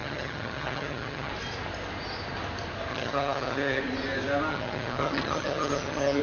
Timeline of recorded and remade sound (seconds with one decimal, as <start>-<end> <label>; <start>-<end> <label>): 0.0-1.3 remade; 1.3-2.9 recorded; 2.9-3.8 remade; 3.8-4.5 recorded; 4.5-6.2 remade